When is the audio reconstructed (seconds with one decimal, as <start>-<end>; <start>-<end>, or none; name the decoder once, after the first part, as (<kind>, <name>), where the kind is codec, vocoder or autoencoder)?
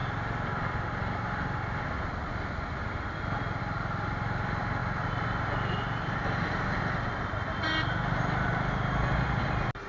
none